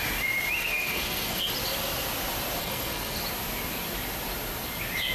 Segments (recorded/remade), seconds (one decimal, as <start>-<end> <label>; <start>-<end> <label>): 0.0-0.6 recorded; 0.6-1.5 remade; 1.5-2.6 recorded; 2.6-3.2 remade; 3.2-5.1 recorded